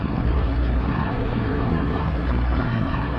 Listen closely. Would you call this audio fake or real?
fake